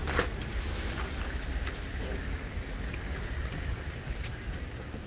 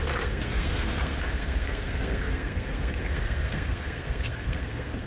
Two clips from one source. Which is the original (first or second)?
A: first